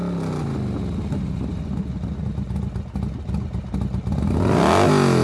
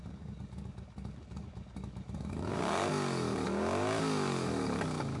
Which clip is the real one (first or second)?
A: first